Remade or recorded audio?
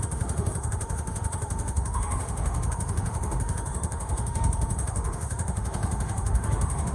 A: remade